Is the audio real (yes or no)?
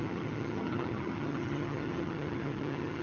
no